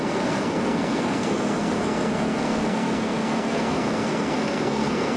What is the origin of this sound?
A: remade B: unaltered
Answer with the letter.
A